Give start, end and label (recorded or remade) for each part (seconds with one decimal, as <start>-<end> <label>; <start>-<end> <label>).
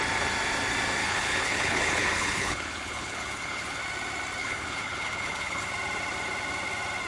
0.0-1.0 recorded; 1.0-3.8 remade; 3.8-4.4 recorded; 4.4-5.7 remade; 5.7-7.1 recorded